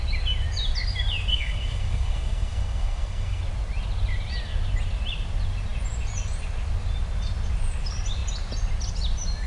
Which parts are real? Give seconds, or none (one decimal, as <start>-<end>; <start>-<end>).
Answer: 0.0-1.3; 3.4-9.5